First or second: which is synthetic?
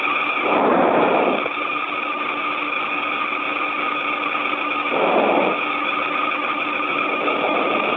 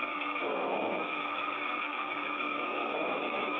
second